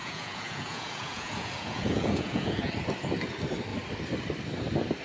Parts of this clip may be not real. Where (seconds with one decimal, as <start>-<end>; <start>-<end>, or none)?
0.0-2.7

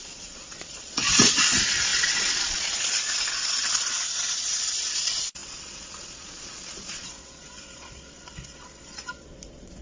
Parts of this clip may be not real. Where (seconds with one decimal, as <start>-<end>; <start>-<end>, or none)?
0.0-9.8